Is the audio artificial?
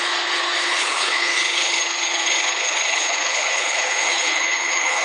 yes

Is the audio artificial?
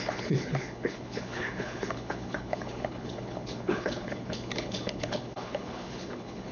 yes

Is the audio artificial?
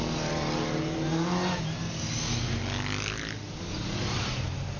no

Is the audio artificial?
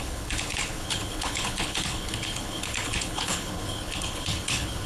yes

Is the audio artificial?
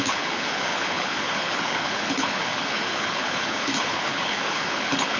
yes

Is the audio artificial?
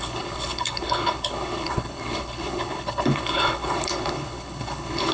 yes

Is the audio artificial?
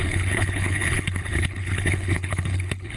yes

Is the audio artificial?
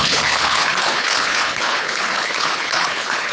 yes